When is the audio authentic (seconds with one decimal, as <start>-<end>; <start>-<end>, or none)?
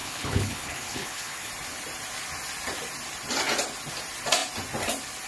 1.5-5.3